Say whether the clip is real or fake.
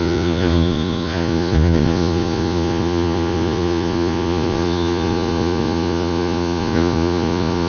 fake